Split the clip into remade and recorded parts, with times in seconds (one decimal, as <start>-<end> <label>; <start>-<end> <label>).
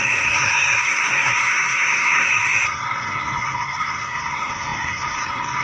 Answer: 0.0-5.6 remade